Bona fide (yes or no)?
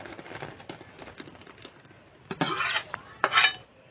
yes